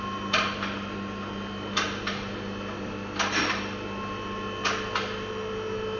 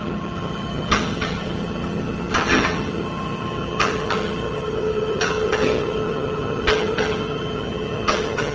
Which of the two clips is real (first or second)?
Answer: first